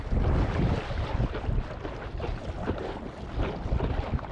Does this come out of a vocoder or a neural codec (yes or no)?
no